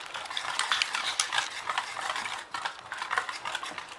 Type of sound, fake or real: real